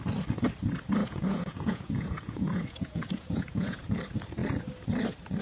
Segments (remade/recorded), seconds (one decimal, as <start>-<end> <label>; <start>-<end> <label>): 0.0-1.0 recorded; 1.0-4.0 remade; 4.0-5.4 recorded